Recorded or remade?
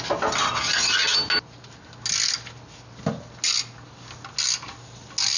recorded